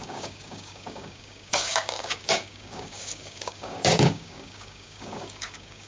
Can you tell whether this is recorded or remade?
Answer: remade